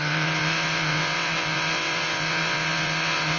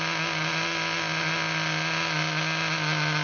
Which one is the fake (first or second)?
first